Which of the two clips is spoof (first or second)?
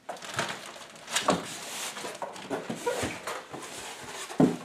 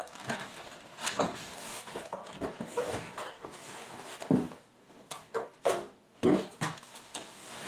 second